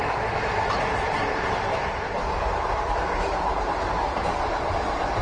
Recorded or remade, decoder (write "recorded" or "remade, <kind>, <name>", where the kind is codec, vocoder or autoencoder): remade, vocoder, BigVGAN v2